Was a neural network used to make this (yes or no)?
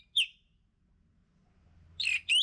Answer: no